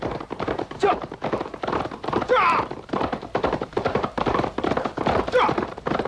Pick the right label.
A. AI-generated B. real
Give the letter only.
A